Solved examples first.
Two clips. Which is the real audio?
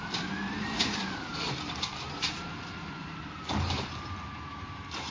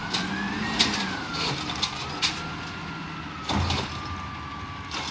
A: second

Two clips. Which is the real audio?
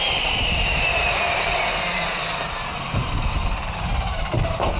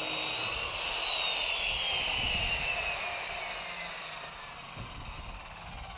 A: second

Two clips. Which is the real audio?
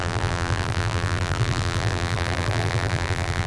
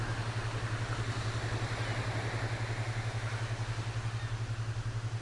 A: second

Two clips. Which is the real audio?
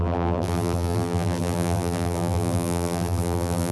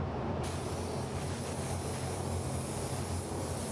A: second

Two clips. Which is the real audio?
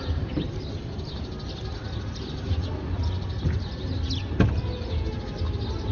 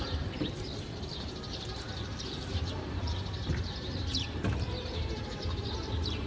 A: first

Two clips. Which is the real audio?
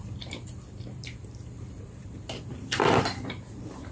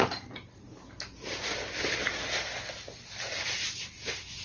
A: second